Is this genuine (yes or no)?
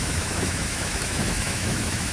no